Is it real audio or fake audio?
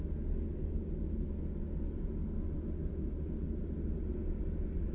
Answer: real